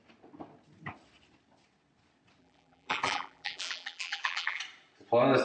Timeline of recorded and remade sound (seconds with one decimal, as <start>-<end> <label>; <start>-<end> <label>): 0.0-2.4 recorded; 2.4-4.6 remade; 4.6-5.4 recorded